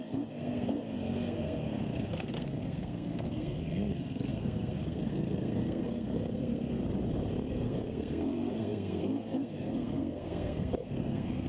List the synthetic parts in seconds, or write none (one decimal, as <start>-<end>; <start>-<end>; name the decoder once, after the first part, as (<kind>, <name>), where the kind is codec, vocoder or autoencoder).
0.0-6.8 (codec, SNAC); 7.5-11.5